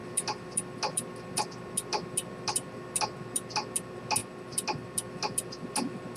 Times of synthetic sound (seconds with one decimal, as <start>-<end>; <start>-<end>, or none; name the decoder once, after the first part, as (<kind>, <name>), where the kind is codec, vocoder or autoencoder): none